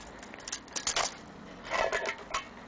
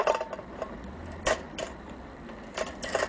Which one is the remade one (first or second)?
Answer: second